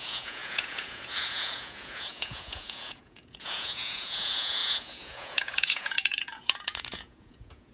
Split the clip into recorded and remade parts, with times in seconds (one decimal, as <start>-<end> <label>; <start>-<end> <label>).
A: 0.0-7.7 remade